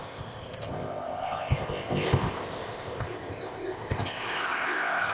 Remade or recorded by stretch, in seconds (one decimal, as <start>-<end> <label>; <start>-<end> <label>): 0.0-5.1 remade